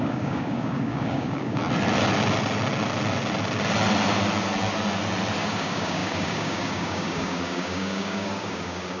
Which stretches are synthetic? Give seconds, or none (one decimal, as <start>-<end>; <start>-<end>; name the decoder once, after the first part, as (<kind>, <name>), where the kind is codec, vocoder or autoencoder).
0.0-1.6 (codec, DAC); 5.4-9.0